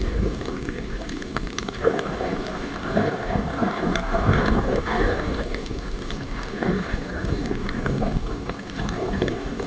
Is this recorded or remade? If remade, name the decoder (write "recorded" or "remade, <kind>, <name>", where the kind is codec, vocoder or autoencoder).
remade, codec, DAC